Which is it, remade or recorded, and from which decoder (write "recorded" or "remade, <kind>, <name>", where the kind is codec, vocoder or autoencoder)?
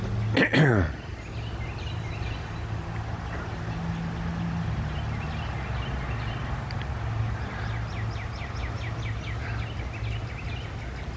recorded